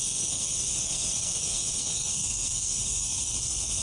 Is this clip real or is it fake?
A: fake